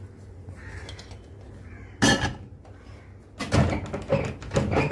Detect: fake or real real